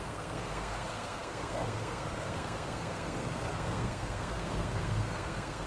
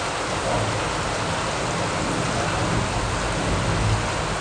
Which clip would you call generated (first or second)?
first